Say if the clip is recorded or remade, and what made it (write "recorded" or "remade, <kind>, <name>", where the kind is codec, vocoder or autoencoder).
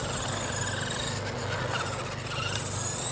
recorded